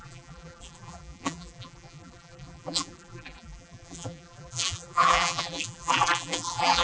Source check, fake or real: fake